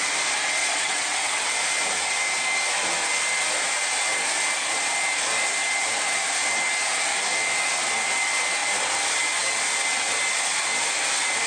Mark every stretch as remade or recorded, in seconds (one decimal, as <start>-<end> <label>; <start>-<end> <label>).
0.0-0.6 recorded; 0.6-1.5 remade; 1.5-11.5 recorded